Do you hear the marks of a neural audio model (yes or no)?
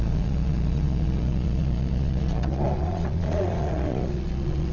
yes